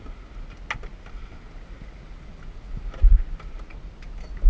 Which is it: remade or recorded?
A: recorded